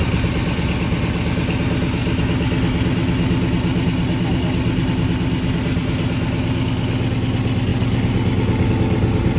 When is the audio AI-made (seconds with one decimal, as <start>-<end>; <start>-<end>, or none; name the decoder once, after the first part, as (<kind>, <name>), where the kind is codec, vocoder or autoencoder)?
none

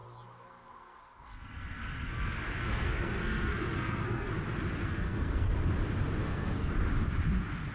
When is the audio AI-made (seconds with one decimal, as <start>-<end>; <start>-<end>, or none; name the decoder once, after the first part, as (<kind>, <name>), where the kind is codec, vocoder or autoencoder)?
0.0-4.3 (codec, SNAC); 4.8-5.5; 6.2-6.7